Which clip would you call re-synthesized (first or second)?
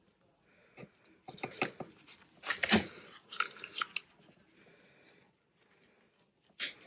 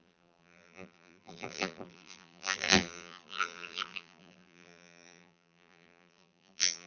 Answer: second